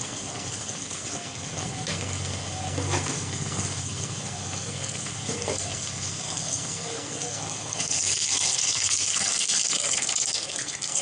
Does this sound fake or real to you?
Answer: fake